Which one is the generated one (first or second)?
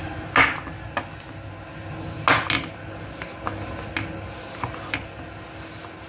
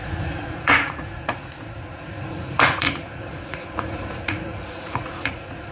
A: second